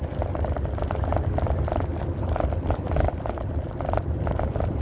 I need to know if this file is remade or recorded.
recorded